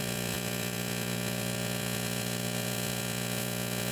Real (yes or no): no